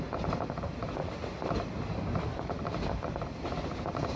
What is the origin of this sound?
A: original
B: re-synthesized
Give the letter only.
B